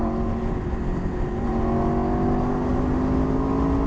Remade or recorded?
recorded